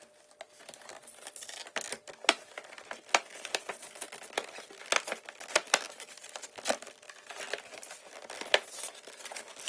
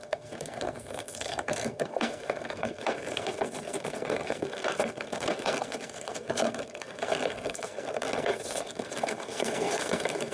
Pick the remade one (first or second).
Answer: second